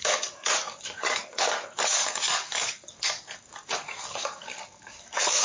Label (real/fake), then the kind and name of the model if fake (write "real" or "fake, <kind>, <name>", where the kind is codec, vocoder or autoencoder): fake, codec, DAC